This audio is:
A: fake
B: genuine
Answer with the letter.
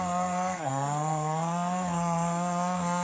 A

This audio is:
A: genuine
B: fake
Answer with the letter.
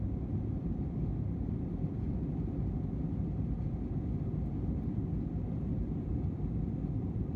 A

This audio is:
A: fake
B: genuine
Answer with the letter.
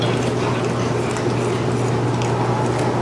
B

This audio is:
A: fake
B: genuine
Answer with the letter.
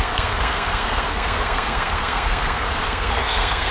A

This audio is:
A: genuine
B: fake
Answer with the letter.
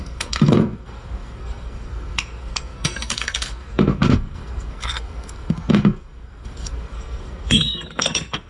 B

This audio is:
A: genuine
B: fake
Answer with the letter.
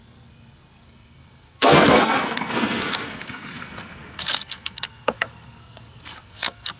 B